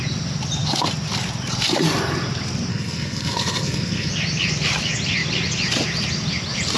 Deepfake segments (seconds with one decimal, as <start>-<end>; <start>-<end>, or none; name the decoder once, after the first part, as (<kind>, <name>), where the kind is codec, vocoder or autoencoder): 2.7-4.1 (codec, SNAC)